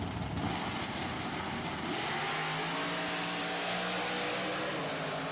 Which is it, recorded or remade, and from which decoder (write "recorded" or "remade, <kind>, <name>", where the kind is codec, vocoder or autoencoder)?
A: recorded